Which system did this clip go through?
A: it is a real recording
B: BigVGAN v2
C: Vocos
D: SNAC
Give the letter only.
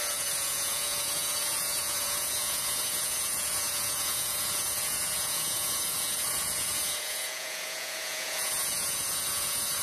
C